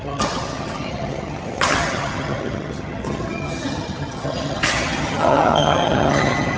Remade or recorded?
remade